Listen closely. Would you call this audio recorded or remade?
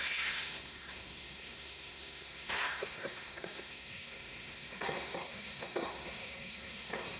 remade